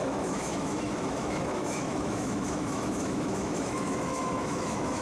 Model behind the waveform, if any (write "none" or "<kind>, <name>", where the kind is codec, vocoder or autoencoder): autoencoder, DAC-VAE